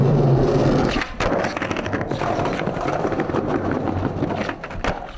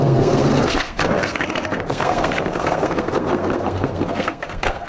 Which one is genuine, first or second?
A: first